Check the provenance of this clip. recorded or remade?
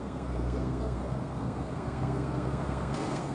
remade